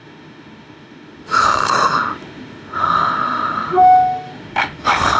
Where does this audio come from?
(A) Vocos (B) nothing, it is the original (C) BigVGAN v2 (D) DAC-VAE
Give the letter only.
D